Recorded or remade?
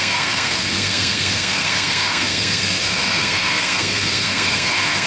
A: remade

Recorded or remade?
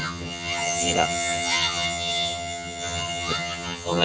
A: remade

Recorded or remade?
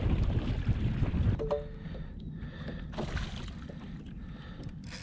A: recorded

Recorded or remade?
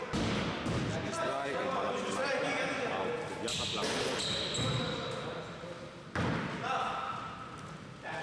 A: recorded